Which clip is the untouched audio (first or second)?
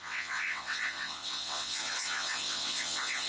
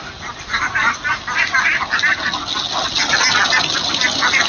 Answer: second